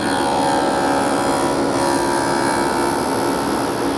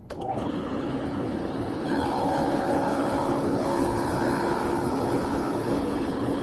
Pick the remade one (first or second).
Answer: second